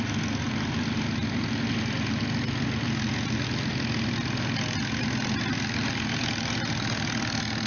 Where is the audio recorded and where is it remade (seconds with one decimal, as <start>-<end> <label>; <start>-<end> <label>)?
0.0-7.7 recorded